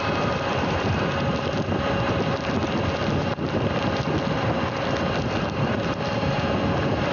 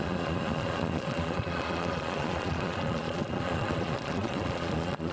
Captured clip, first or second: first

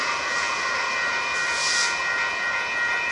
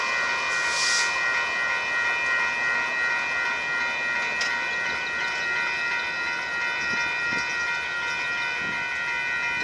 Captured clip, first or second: second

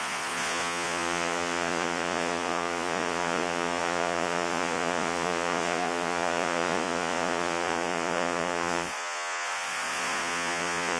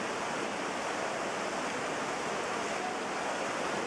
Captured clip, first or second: second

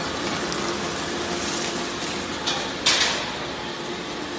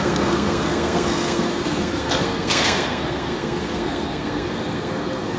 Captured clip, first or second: first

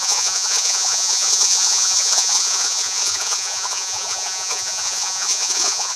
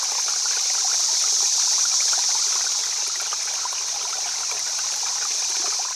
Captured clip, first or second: second